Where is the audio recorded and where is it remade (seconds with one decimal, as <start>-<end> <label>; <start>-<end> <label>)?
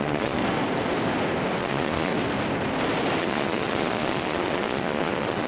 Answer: 0.0-0.4 remade; 0.4-1.6 recorded; 1.6-2.1 remade; 2.1-3.2 recorded; 3.2-5.5 remade